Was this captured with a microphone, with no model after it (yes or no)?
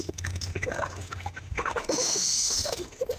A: no